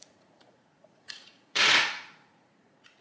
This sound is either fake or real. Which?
fake